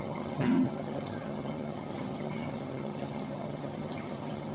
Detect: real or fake fake